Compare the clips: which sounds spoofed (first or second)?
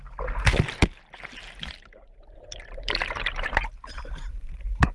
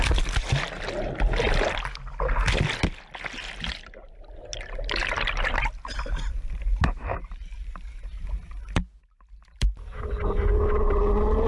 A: first